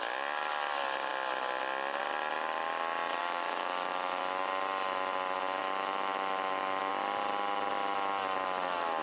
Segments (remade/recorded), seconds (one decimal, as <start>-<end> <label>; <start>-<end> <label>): 0.0-3.2 recorded; 3.2-4.2 remade; 4.2-5.6 recorded; 5.6-6.9 remade; 6.9-9.0 recorded